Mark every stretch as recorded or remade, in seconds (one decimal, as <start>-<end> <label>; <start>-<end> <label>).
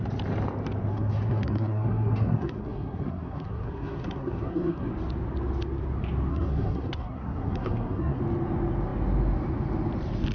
0.0-0.9 recorded; 0.9-4.9 remade; 4.9-6.3 recorded; 6.3-8.2 remade; 8.2-10.3 recorded